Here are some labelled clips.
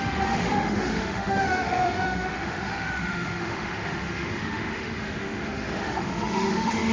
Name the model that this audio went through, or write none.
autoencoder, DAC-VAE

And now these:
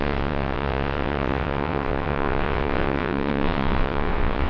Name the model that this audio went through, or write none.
vocoder, WaveNeXt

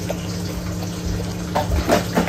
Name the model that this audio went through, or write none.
none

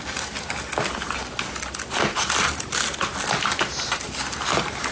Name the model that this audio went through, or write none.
none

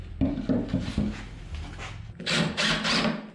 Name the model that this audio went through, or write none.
none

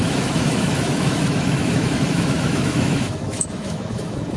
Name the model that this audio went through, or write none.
autoencoder, DAC-VAE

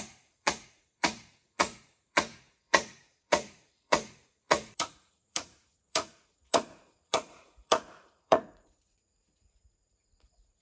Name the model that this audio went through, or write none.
vocoder, Vocos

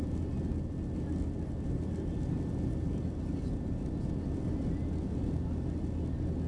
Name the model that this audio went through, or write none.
none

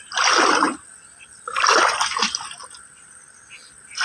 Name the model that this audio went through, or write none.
none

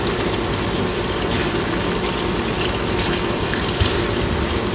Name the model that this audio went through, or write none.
none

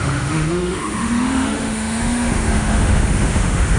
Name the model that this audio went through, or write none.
autoencoder, DAC-VAE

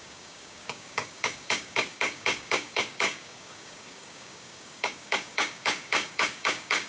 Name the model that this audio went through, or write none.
codec, DAC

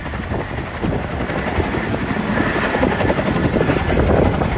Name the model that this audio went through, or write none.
none